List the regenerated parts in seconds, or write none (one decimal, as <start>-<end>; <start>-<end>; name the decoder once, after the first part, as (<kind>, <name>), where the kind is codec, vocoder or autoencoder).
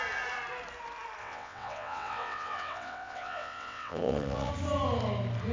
1.2-4.5 (vocoder, WaveNeXt)